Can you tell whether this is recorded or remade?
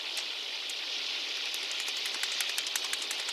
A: recorded